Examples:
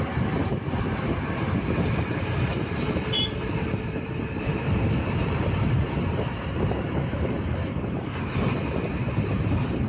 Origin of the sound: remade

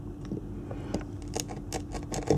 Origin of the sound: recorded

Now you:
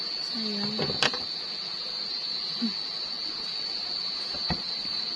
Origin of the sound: recorded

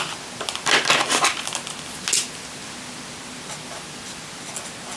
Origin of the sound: recorded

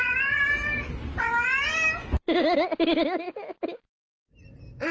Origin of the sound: recorded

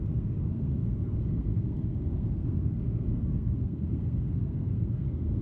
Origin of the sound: remade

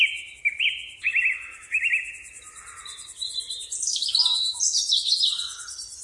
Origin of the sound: recorded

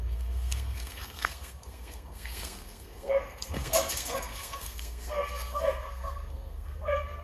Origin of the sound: remade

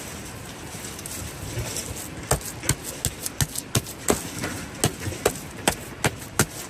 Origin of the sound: recorded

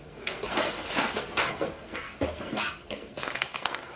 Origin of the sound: remade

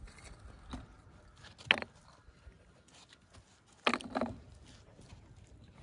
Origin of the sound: recorded